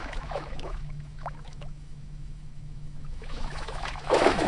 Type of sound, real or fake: fake